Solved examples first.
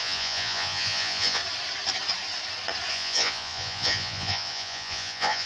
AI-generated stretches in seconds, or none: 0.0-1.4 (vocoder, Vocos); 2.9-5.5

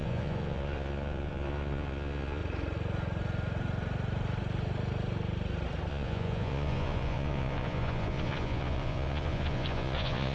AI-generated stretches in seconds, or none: 0.0-2.4 (vocoder, Vocos); 5.9-10.3

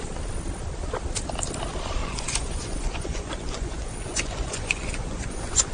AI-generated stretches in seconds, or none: 2.0-5.7 (vocoder, Vocos)

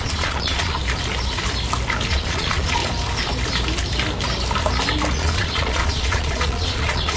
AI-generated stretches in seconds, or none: 0.0-0.8 (vocoder, Vocos); 2.1-2.8; 5.1-7.2

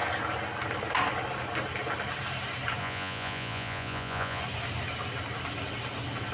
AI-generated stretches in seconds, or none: 2.8-4.4 (vocoder, Vocos)